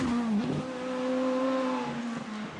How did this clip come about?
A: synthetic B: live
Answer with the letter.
B